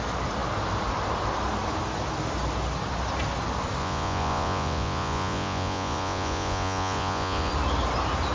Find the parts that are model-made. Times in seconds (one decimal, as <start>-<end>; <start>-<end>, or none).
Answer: 3.8-7.5